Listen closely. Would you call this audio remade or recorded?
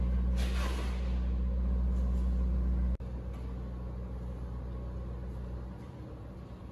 recorded